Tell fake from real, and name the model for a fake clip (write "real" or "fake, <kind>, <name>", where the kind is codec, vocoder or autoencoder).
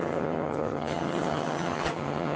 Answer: fake, vocoder, HiFi-GAN